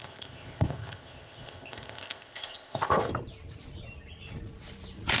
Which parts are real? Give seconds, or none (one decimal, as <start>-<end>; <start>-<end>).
3.1-5.2